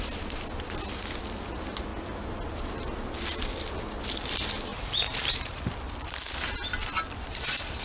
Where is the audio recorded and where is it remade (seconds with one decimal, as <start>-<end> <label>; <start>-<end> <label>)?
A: 0.0-4.7 recorded; 4.7-5.6 remade; 5.6-7.8 recorded